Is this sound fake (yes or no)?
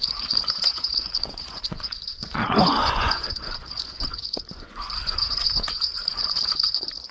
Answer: yes